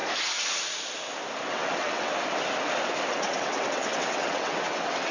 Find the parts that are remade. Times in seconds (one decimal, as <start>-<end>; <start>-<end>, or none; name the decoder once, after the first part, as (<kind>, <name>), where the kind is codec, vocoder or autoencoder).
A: 1.5-2.1 (vocoder, WaveNeXt); 3.1-5.1